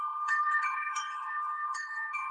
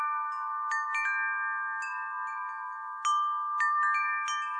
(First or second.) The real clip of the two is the second